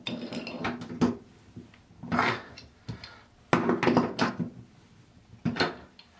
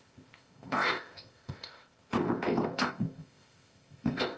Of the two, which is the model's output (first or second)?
second